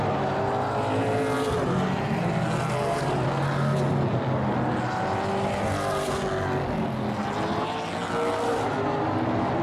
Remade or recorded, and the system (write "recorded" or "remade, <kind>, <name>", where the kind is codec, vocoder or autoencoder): recorded